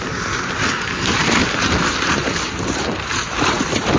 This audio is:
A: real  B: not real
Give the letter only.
B